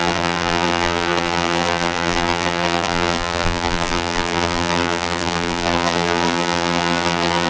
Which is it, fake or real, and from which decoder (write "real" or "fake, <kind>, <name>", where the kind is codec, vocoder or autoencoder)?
fake, vocoder, BigVGAN v2